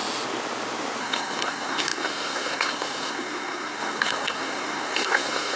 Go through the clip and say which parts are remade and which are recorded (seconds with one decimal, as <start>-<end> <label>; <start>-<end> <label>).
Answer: 0.0-1.0 recorded; 1.0-5.6 remade